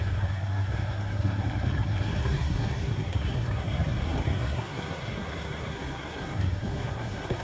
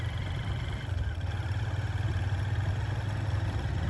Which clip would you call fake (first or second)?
first